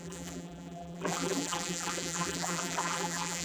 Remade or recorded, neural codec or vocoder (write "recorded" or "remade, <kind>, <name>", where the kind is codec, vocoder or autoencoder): remade, vocoder, BigVGAN v2